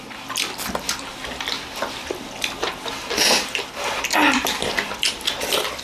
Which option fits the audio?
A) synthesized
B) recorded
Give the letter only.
B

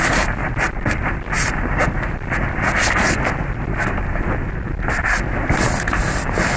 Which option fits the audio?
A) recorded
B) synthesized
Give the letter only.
B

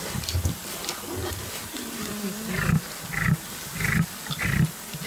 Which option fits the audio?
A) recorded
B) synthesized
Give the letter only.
A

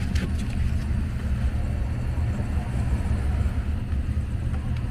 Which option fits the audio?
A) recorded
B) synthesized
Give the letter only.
A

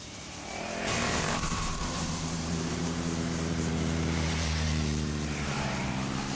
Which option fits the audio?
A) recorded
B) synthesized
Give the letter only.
B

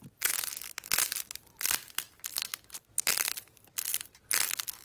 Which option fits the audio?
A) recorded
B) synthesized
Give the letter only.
B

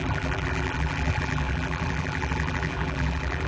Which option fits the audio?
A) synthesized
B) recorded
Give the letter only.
A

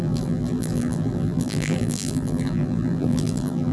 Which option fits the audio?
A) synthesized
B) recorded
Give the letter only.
A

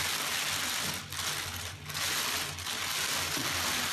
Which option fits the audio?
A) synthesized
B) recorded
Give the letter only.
B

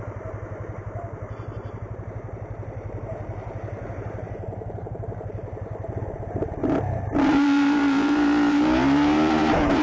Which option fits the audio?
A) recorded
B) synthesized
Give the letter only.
B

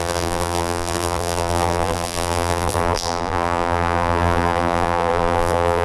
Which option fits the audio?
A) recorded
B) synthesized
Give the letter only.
B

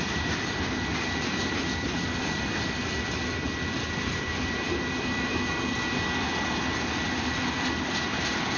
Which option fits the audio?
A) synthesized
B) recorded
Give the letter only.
A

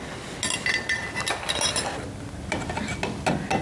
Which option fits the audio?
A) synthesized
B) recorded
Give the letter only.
B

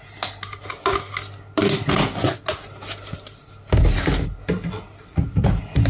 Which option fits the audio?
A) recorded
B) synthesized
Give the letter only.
A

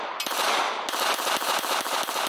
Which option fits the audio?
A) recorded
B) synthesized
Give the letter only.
A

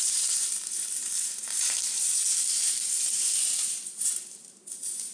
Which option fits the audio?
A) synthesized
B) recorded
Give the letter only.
A